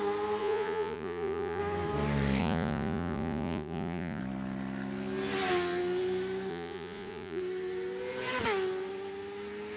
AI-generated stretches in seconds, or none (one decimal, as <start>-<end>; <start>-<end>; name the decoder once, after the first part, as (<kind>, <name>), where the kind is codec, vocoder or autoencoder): 0.4-1.6 (vocoder, Vocos); 2.4-4.2; 6.5-7.4